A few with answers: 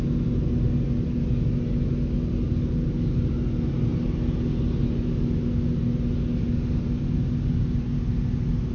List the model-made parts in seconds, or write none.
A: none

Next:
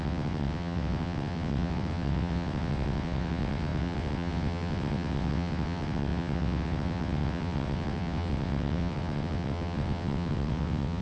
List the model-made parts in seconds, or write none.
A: 0.0-11.0 (vocoder, WaveNeXt)

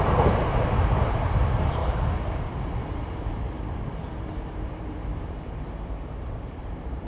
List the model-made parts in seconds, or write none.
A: 0.0-1.8 (vocoder, BigVGAN v2); 2.4-2.8; 3.3-7.1